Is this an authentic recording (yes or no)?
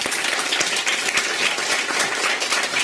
yes